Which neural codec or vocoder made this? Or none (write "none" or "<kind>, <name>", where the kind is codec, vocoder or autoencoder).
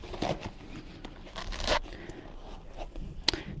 none